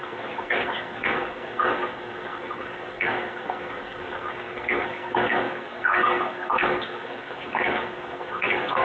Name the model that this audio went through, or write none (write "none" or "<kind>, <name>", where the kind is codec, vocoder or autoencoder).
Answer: codec, SNAC